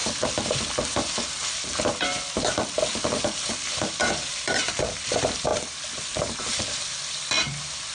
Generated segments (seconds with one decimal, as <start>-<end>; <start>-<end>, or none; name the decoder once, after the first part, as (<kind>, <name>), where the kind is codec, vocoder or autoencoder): 0.0-2.1 (vocoder, BigVGAN v2); 3.0-7.9